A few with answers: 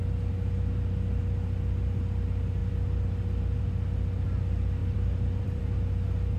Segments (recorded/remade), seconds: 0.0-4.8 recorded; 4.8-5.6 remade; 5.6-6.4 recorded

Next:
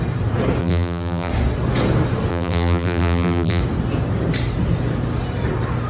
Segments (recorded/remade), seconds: 0.0-0.6 recorded; 0.6-1.3 remade; 1.3-2.3 recorded; 2.3-3.6 remade; 3.6-5.9 recorded

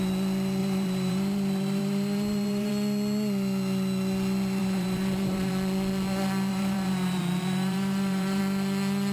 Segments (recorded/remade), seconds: 0.0-0.6 recorded; 0.6-2.7 remade; 2.7-4.6 recorded; 4.6-5.5 remade; 5.5-6.5 recorded; 6.5-8.4 remade; 8.4-9.1 recorded